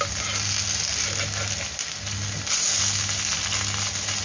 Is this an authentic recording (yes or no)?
yes